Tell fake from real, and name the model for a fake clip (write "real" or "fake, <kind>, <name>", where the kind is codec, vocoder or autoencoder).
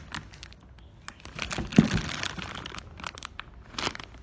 real